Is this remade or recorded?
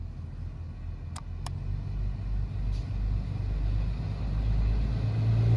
recorded